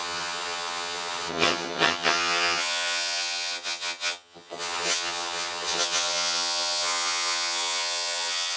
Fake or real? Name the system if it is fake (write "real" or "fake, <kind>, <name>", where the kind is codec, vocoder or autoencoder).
fake, vocoder, HiFi-GAN